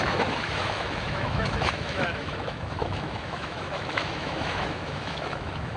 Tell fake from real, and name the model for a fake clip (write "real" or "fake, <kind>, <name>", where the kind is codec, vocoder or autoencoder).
fake, autoencoder, DAC-VAE